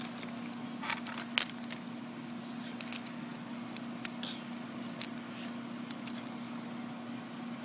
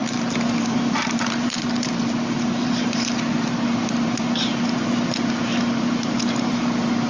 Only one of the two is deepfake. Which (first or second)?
second